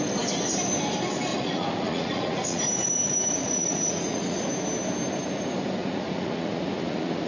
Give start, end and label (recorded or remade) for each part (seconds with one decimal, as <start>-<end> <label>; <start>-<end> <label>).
0.0-1.3 recorded; 1.3-2.6 remade; 2.6-3.4 recorded; 3.4-4.5 remade; 4.5-5.8 recorded; 5.8-7.3 remade